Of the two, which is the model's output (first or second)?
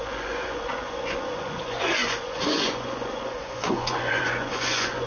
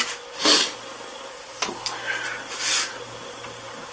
first